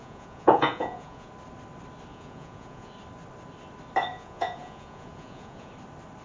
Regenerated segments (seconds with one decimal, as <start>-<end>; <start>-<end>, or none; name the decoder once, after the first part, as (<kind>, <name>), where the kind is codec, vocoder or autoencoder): 0.0-1.3 (vocoder, Vocos); 2.1-2.9; 4.1-5.7